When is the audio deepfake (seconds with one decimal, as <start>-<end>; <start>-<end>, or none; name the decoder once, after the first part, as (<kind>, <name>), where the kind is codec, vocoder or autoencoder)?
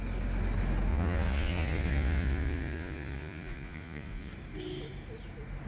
0.9-4.3 (vocoder, Vocos)